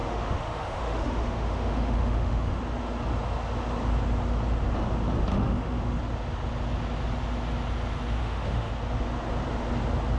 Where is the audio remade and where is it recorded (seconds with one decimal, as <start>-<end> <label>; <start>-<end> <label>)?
0.0-2.6 remade; 2.6-5.3 recorded; 5.3-6.0 remade; 6.0-8.2 recorded; 8.2-8.7 remade; 8.7-10.2 recorded